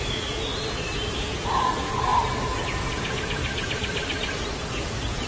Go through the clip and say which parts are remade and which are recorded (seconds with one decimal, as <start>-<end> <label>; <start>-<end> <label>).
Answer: 0.0-0.5 remade; 0.5-1.1 recorded; 1.1-2.1 remade; 2.1-2.8 recorded; 2.8-3.4 remade; 3.4-4.6 recorded; 4.6-5.3 remade